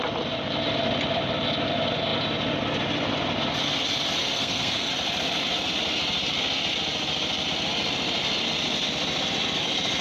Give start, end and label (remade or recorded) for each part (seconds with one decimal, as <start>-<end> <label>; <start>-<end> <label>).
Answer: 0.0-4.2 recorded; 4.2-4.9 remade; 4.9-10.0 recorded